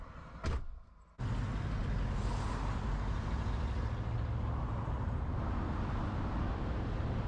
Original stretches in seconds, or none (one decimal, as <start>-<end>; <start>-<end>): 0.0-7.3